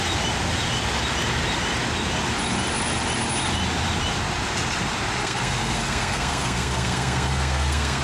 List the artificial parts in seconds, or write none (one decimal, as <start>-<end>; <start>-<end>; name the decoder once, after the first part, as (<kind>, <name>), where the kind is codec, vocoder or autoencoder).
5.2-8.0 (codec, SNAC)